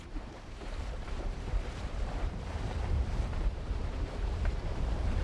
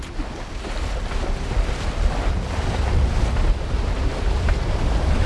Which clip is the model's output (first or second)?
first